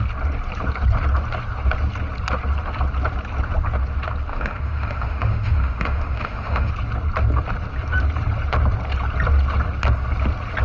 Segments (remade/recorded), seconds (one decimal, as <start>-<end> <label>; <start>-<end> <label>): 0.0-4.3 recorded; 4.3-6.7 remade; 6.7-10.6 recorded